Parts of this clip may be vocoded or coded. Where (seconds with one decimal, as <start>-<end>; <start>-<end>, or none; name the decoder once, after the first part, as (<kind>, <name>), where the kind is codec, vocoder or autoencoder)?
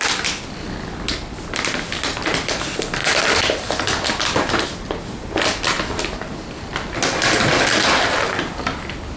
none